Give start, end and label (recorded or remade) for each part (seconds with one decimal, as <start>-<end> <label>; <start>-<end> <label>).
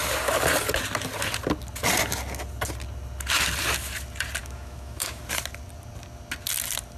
0.0-4.4 recorded; 4.4-5.2 remade; 5.2-7.0 recorded